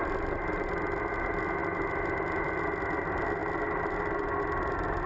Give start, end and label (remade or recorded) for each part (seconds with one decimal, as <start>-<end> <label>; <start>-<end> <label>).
0.0-5.1 recorded